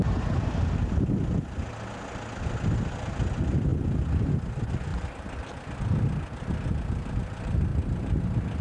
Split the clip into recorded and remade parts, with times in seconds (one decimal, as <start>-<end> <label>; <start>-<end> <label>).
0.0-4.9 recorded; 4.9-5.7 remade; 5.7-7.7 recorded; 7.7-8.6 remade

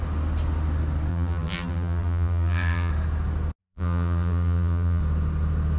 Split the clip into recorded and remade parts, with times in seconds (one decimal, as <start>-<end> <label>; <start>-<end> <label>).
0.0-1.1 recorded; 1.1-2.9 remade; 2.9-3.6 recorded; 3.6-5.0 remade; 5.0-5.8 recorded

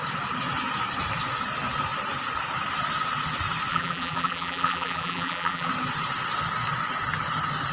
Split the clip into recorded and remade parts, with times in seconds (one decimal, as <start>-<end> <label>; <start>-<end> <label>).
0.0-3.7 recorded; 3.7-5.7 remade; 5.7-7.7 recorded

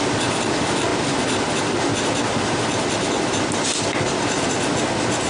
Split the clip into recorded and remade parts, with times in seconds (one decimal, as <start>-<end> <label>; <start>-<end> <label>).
0.0-5.3 recorded

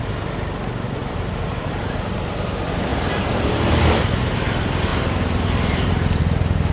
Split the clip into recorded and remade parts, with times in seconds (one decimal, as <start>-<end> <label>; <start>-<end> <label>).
0.0-1.0 recorded; 1.0-2.1 remade; 2.1-2.9 recorded; 2.9-3.8 remade; 3.8-4.9 recorded; 4.9-6.2 remade; 6.2-6.7 recorded

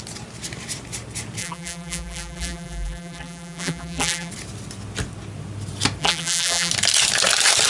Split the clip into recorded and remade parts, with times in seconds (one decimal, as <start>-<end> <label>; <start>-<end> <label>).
0.0-1.4 recorded; 1.4-4.3 remade; 4.3-6.0 recorded; 6.0-6.7 remade; 6.7-7.7 recorded

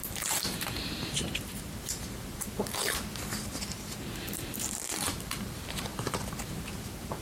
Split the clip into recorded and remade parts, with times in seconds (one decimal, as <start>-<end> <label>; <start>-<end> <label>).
0.0-7.2 remade